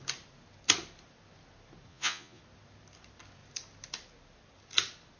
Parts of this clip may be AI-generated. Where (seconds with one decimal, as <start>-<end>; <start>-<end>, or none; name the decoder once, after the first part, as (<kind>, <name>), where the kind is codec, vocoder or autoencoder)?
1.9-2.4 (vocoder, Vocos)